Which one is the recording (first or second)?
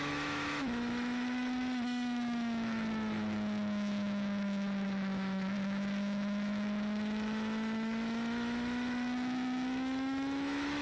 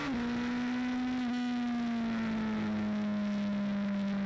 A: second